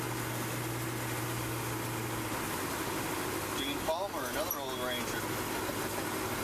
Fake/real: real